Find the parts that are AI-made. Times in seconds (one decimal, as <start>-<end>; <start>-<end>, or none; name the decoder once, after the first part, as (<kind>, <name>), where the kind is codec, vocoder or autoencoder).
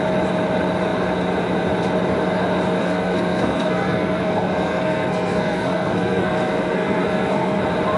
2.8-7.6 (codec, SNAC)